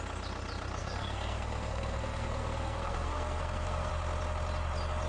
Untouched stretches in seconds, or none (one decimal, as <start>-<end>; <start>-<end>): 0.0-0.8; 3.9-5.1